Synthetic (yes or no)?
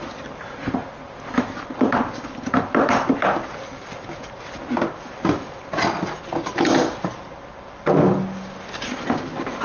no